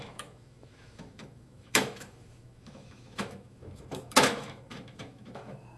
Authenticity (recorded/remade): remade